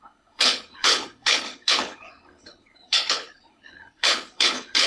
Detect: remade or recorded remade